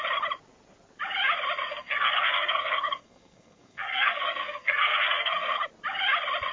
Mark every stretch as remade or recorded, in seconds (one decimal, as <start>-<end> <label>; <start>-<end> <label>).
0.0-1.7 recorded; 1.7-5.6 remade; 5.6-6.5 recorded